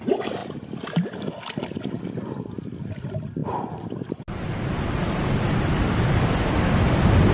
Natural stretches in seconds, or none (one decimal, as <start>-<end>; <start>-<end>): 0.0-7.3